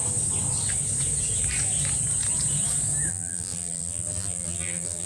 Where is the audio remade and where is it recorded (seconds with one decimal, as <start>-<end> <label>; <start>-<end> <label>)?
0.0-3.1 recorded; 3.1-5.1 remade